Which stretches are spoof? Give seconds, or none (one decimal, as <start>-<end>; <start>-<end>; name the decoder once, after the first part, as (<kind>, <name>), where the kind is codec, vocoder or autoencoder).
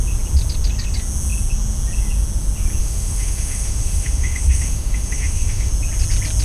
2.8-5.7 (autoencoder, DAC-VAE)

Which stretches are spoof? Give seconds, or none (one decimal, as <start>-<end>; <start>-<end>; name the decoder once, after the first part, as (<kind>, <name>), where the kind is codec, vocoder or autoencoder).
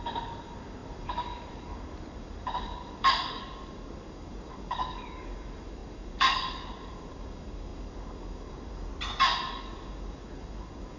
0.0-8.9 (codec, DAC); 9.5-11.0